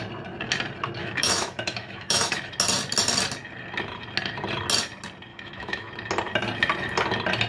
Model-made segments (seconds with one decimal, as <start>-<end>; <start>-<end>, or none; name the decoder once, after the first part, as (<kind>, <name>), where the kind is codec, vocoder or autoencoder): 1.0-2.5 (autoencoder, DAC-VAE); 5.3-5.9